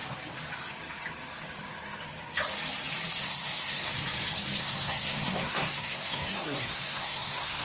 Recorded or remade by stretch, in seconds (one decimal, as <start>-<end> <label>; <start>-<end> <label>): 0.0-3.2 recorded; 3.2-3.9 remade; 3.9-4.6 recorded; 4.6-7.6 remade